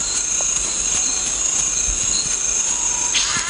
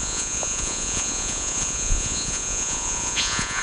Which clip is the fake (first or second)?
second